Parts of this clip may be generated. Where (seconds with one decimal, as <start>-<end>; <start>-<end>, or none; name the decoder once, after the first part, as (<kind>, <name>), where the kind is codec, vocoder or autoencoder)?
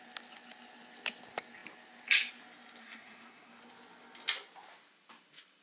2.8-3.6 (codec, SNAC)